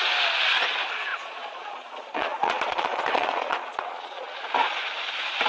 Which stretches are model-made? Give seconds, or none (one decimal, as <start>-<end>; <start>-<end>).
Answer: 1.1-4.4